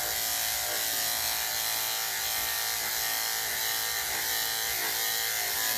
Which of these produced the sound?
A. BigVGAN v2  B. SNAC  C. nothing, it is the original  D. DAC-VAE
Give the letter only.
C